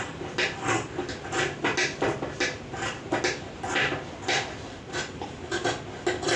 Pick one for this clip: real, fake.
real